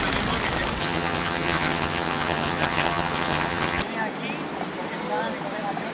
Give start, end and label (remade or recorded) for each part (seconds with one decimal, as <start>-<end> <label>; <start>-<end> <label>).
0.0-0.8 recorded; 0.8-3.8 remade; 3.8-5.9 recorded